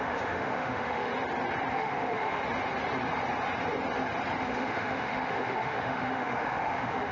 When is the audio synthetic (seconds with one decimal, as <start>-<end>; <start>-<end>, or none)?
0.0-1.1; 1.7-2.4; 4.4-7.1